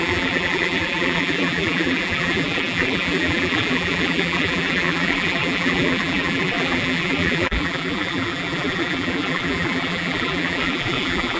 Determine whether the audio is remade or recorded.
remade